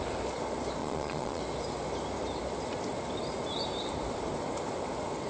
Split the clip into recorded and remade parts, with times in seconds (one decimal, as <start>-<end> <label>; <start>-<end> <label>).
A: 0.0-0.8 recorded; 0.8-1.4 remade; 1.4-5.3 recorded